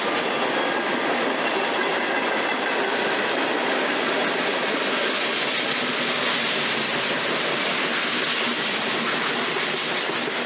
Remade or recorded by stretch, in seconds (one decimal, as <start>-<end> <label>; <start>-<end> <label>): 0.0-10.5 recorded